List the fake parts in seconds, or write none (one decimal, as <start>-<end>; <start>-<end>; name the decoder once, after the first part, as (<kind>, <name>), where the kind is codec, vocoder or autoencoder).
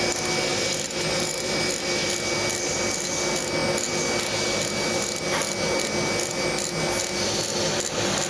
0.5-1.7 (vocoder, BigVGAN v2)